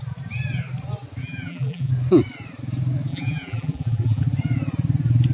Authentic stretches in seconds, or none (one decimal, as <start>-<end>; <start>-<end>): 0.0-1.2; 1.9-3.1; 4.2-5.3